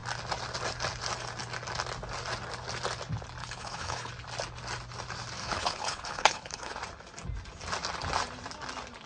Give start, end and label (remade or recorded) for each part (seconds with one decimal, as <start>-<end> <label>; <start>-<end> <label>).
0.0-3.4 recorded; 3.4-4.1 remade; 4.1-5.4 recorded; 5.4-6.8 remade; 6.8-9.1 recorded